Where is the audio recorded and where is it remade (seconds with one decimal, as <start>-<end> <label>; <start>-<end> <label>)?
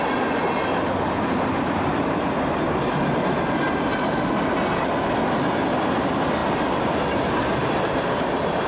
0.0-8.7 recorded